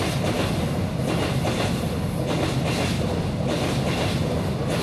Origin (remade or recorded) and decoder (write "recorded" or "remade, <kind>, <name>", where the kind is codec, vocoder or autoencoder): recorded